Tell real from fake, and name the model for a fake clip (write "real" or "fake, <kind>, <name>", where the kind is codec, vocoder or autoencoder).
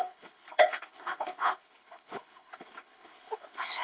fake, codec, HILCodec